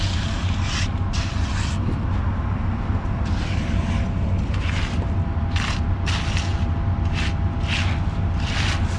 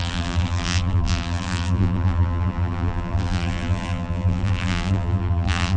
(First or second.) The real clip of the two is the first